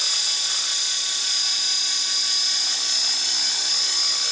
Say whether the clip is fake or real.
real